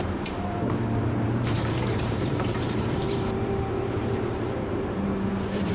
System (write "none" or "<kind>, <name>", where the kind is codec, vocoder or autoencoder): vocoder, BigVGAN v2